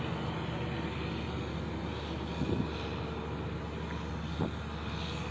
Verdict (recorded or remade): recorded